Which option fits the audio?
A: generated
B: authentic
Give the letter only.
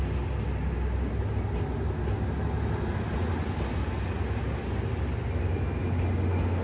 B